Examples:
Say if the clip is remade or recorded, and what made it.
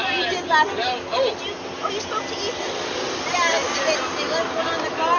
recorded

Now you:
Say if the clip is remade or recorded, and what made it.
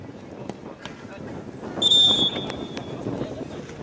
recorded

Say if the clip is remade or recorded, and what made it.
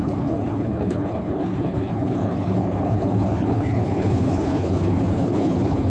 remade, codec, HILCodec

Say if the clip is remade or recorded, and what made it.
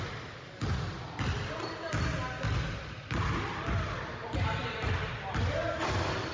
recorded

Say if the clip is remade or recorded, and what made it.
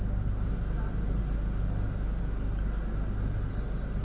recorded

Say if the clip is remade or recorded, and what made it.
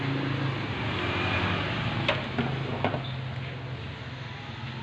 recorded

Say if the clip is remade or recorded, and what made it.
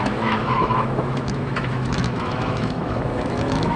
remade, autoencoder, DAC-VAE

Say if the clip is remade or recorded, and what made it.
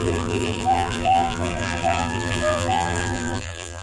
remade, vocoder, BigVGAN v2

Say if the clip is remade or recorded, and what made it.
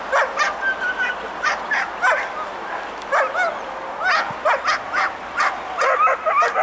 recorded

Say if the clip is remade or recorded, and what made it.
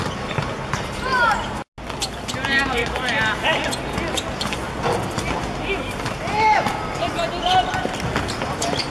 recorded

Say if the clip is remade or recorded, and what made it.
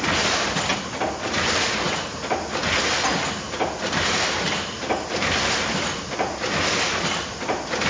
recorded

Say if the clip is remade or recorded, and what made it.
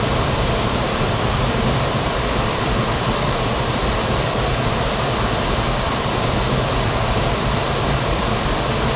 remade, vocoder, BigVGAN v2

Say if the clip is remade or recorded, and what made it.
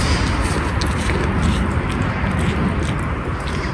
recorded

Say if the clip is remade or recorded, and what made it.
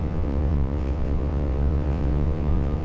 remade, vocoder, WaveNeXt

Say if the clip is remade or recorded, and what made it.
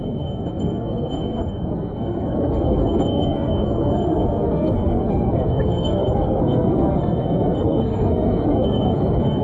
remade, codec, SNAC